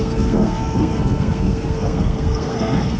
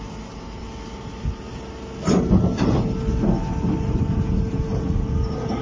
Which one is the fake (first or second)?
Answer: first